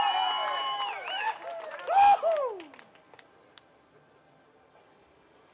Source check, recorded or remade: recorded